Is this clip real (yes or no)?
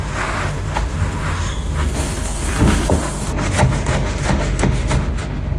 no